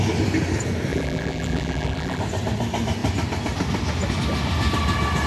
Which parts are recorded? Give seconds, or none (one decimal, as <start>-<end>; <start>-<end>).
0.0-0.9; 2.2-5.3